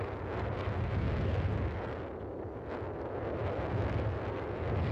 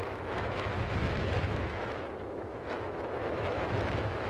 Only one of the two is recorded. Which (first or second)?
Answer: first